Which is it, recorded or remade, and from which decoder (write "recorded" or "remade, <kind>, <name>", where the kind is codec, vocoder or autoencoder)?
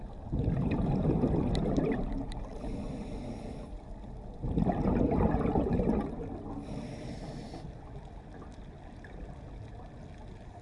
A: recorded